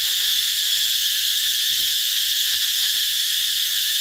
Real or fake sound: fake